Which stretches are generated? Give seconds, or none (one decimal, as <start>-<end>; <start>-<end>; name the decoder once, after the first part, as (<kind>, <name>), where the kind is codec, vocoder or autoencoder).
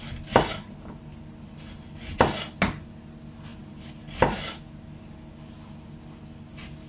none